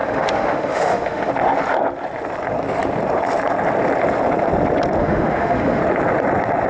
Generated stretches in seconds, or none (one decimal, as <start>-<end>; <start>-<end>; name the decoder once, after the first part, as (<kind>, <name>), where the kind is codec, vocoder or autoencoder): 0.0-1.3 (autoencoder, DAC-VAE); 5.0-5.8